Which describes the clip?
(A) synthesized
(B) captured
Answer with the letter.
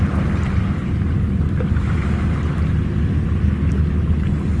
B